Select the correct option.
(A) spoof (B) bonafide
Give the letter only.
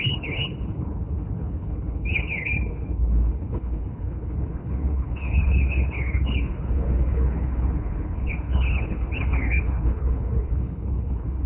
A